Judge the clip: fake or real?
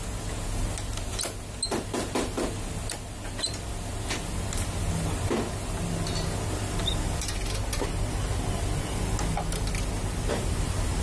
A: real